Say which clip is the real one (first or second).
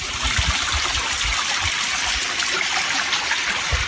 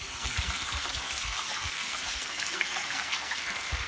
first